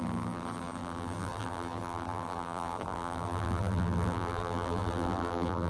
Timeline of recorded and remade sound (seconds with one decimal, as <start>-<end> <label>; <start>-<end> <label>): 0.0-5.7 remade